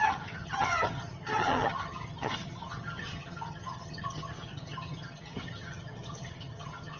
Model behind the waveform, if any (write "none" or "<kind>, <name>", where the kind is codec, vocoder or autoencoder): vocoder, HiFi-GAN